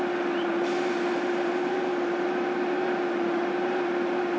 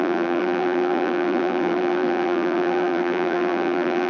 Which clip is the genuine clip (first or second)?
first